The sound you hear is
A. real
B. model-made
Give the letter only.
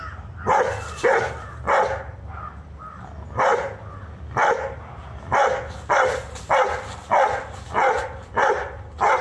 A